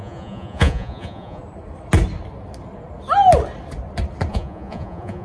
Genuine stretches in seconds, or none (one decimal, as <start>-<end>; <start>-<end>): 1.4-4.3